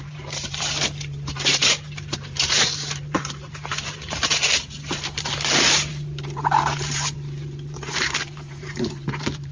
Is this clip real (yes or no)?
no